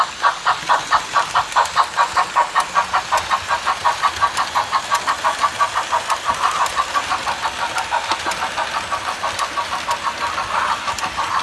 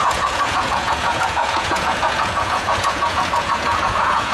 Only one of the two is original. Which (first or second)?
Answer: first